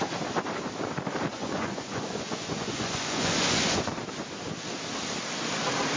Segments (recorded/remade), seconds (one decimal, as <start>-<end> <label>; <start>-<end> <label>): 0.0-1.3 recorded; 1.3-3.8 remade; 3.8-6.0 recorded